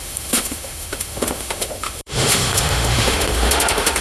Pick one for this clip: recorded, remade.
remade